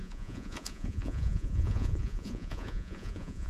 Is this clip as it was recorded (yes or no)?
no